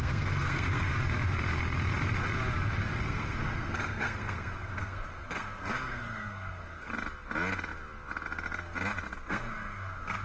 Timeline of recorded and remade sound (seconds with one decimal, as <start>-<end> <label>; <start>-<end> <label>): 0.0-0.9 remade; 0.9-3.0 recorded; 3.0-6.9 remade; 6.9-9.3 recorded; 9.3-10.2 remade